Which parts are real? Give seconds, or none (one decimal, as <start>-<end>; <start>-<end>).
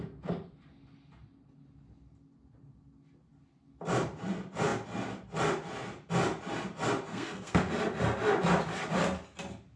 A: 0.0-7.1; 7.7-9.8